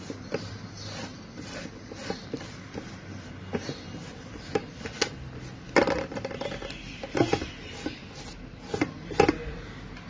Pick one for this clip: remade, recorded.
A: recorded